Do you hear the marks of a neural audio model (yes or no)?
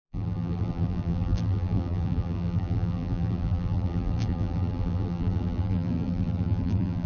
yes